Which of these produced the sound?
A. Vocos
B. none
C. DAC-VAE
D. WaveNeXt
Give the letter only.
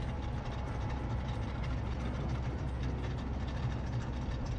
B